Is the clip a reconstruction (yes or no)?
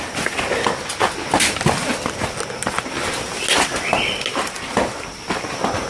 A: no